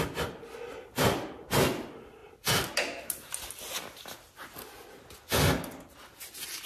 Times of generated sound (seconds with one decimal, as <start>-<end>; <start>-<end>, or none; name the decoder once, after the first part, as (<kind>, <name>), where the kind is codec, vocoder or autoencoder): none